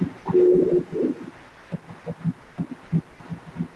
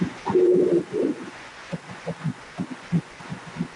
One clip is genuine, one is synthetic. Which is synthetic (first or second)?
second